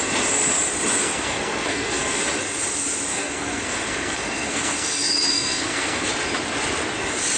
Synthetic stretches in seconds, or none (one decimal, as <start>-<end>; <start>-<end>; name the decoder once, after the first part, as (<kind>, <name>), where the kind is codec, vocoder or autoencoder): 1.0-2.2 (codec, SNAC); 3.1-6.1